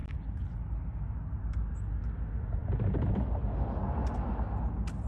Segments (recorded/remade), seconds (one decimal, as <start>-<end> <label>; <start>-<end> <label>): 0.0-5.1 recorded